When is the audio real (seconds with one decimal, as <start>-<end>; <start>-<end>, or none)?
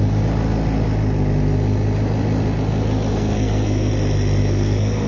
0.0-3.1; 3.9-4.4